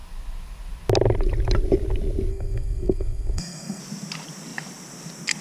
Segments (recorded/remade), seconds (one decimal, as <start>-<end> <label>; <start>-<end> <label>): 0.0-2.3 recorded; 2.3-3.8 remade; 3.8-5.4 recorded